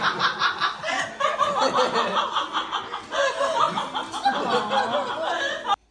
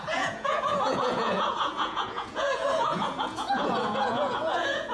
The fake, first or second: second